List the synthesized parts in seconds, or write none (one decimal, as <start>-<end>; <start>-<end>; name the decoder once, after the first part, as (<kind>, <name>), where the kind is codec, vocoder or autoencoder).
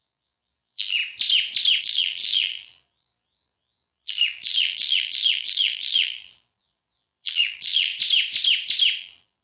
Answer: 0.0-1.0 (vocoder, BigVGAN v2); 1.8-7.9; 9.0-9.4